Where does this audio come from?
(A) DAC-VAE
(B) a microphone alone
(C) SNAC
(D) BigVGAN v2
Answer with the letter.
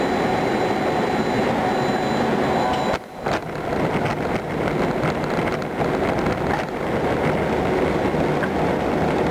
B